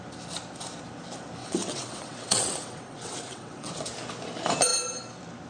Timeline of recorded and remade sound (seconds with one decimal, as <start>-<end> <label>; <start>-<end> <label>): 0.0-1.4 recorded; 1.4-3.7 remade; 3.7-5.5 recorded